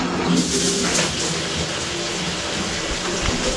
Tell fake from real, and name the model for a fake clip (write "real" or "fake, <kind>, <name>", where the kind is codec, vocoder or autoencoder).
real